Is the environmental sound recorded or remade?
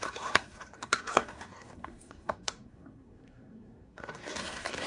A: remade